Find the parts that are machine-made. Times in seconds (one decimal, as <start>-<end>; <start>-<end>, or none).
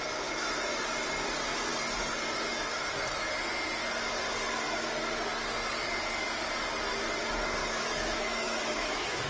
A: 7.6-9.3